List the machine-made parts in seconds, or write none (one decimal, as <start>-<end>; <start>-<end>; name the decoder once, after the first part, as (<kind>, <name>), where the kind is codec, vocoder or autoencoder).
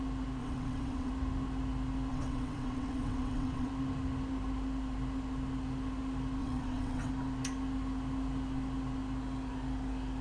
0.4-1.1 (vocoder, WaveNeXt); 2.1-3.7; 6.4-7.1